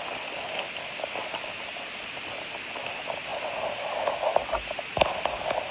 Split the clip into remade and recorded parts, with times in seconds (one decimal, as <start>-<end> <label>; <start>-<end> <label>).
0.0-5.7 recorded